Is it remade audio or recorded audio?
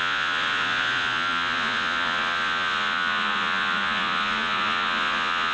remade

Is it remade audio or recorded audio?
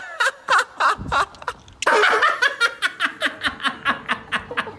recorded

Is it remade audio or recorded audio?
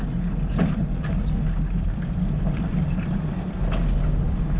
recorded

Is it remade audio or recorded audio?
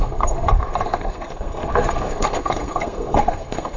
remade